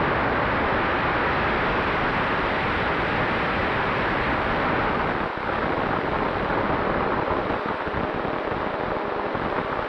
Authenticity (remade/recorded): recorded